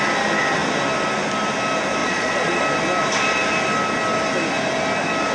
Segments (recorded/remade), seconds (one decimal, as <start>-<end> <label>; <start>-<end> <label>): 0.0-2.0 recorded; 2.0-2.6 remade; 2.6-5.3 recorded